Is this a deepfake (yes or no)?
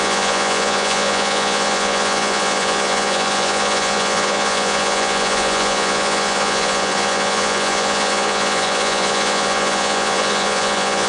yes